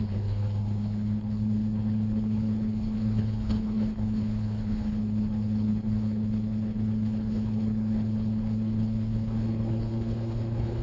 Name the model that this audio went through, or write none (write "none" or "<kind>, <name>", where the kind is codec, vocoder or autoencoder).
codec, HILCodec